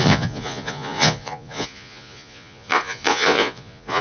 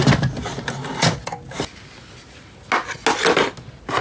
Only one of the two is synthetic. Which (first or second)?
first